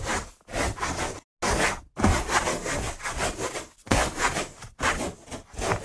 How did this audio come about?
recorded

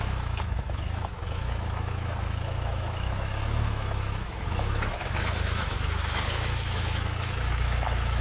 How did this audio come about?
remade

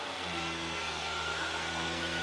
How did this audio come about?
remade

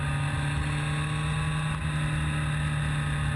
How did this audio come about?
recorded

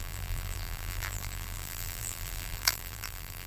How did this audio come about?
remade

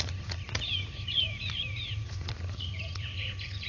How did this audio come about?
remade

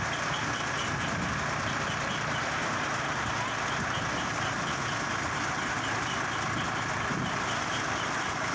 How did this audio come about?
recorded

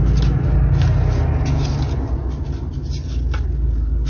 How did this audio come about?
recorded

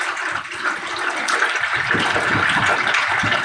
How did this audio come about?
recorded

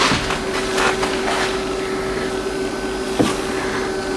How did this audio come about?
recorded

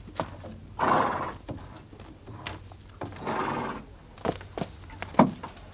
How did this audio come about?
recorded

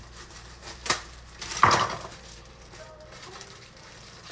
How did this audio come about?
remade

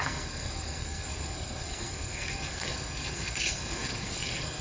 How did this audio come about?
remade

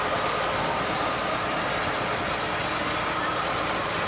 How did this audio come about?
recorded